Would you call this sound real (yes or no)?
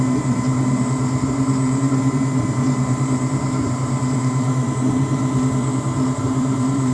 no